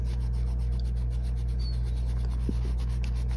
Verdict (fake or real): real